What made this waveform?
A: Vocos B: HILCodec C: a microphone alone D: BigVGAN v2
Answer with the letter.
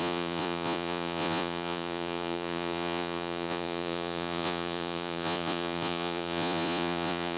A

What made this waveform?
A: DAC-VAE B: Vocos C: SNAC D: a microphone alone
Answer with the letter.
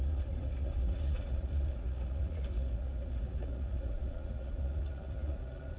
B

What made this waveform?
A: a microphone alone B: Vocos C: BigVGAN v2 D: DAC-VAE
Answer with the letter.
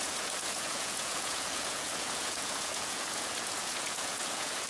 B